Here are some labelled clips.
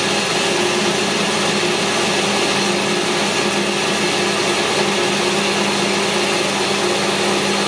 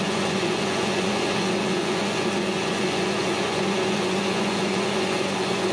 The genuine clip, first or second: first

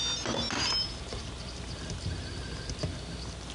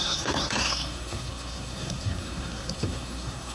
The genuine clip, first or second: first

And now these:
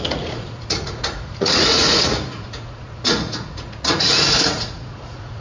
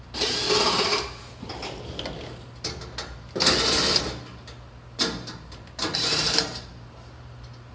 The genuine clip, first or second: second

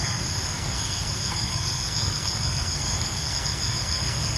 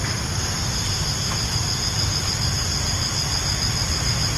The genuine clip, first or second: second